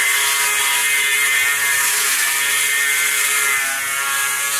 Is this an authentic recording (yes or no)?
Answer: yes